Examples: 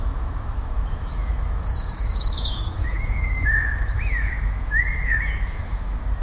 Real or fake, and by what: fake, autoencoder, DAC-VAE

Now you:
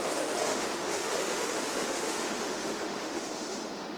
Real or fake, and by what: fake, autoencoder, DAC-VAE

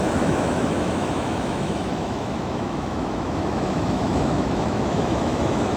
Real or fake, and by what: fake, autoencoder, DAC-VAE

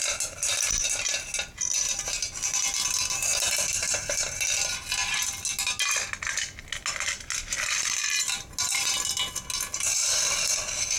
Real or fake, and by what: real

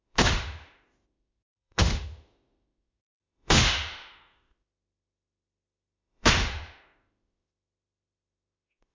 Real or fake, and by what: fake, autoencoder, DAC-VAE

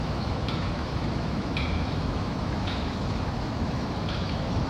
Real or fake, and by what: fake, autoencoder, DAC-VAE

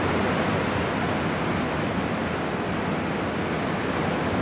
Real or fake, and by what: real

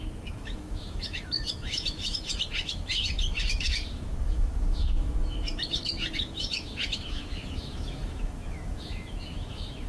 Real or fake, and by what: fake, autoencoder, DAC-VAE